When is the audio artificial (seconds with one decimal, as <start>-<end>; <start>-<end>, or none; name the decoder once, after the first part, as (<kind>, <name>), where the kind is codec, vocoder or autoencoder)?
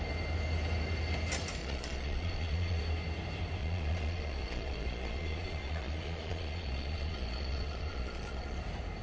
1.6-2.8 (vocoder, Vocos); 3.6-8.6